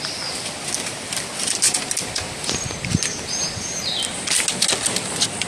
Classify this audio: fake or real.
real